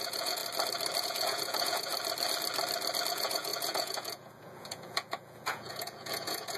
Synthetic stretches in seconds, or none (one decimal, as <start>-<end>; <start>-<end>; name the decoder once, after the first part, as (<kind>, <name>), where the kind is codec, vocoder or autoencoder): 0.0-0.4 (vocoder, Vocos); 1.0-1.9; 3.1-6.6